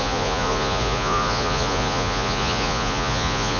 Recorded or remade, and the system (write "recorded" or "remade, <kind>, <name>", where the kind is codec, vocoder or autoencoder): remade, vocoder, Vocos